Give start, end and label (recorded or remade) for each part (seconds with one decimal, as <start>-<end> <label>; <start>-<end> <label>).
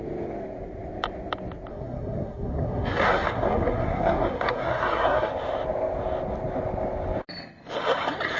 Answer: 0.0-1.7 recorded; 1.7-5.3 remade; 5.3-8.4 recorded